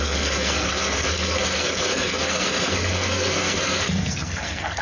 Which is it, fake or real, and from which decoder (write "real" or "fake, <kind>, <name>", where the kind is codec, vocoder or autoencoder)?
fake, codec, SNAC